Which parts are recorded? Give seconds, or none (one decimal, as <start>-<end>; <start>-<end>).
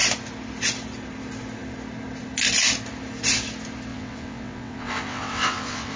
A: 0.0-3.9